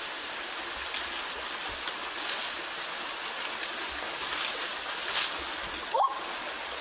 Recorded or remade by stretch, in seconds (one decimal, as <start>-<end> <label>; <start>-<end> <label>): 0.0-6.8 recorded